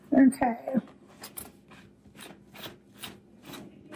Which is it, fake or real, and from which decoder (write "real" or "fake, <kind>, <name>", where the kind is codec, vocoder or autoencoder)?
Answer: real